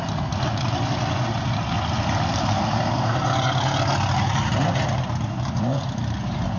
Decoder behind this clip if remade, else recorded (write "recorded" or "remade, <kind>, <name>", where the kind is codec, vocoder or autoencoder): recorded